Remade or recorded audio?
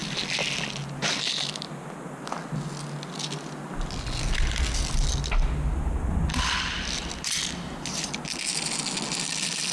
recorded